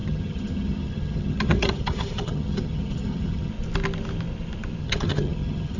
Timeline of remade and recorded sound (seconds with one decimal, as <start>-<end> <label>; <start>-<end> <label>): 0.0-3.5 remade; 3.5-4.8 recorded; 4.8-5.8 remade